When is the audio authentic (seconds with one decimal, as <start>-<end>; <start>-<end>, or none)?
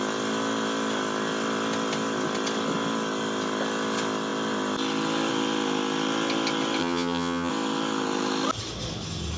0.0-6.8; 7.5-9.4